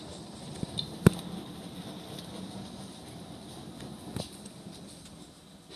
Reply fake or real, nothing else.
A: real